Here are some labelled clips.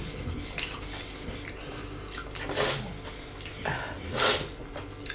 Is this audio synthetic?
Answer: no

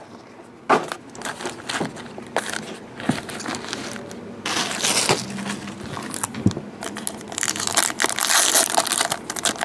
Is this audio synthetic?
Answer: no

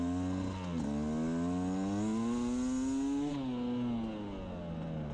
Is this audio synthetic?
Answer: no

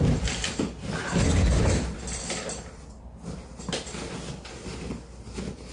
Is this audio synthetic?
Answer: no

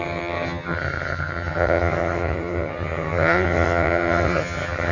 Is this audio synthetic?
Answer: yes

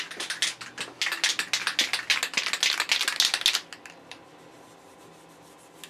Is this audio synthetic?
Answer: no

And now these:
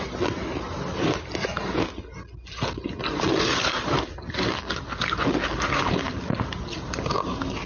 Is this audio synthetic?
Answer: no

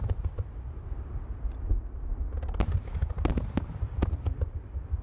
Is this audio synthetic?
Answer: no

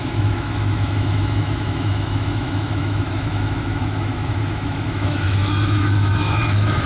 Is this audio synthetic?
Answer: yes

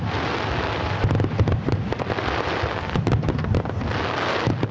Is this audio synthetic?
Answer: no